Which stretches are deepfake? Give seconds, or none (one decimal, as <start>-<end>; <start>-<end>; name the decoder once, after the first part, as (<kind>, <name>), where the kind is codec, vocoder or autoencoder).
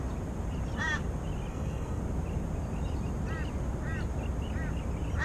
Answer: 1.5-2.0 (codec, SNAC)